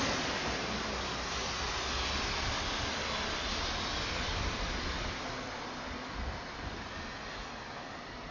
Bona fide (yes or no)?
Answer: yes